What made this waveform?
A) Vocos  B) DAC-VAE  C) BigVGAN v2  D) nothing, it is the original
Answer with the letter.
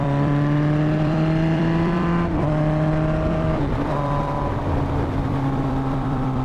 C